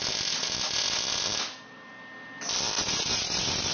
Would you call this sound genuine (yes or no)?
yes